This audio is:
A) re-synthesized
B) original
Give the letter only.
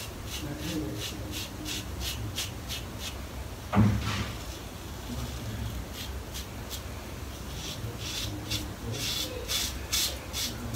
B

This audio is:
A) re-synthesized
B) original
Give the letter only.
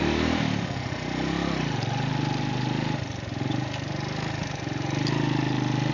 B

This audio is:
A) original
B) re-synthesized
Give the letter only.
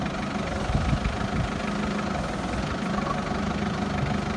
A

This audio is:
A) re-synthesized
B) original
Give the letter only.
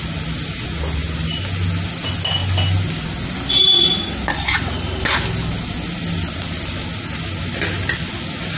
B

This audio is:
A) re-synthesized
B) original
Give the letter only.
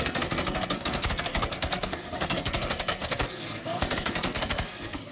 A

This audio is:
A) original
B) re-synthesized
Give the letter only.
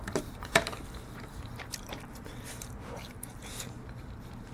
B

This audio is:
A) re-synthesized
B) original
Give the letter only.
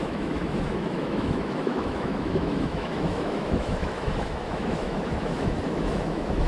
A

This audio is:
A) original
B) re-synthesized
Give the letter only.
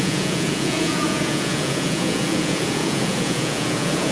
B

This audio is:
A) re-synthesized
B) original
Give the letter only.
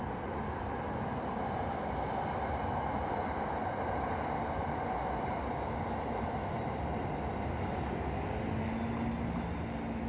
B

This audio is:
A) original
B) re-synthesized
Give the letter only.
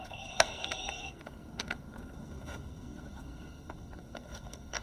B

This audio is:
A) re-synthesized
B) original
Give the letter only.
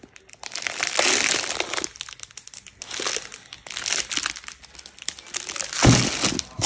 B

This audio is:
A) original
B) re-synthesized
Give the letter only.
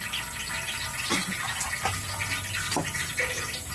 A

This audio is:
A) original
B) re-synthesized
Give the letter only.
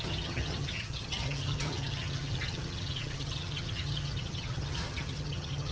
B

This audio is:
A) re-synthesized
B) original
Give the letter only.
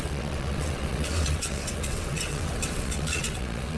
A